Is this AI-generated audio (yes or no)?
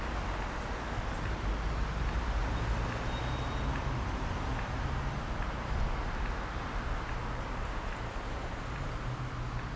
no